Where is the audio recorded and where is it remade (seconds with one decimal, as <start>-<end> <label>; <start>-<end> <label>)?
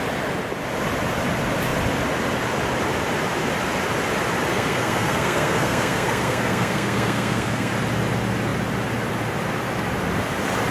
0.0-4.5 recorded; 4.5-7.7 remade; 7.7-10.7 recorded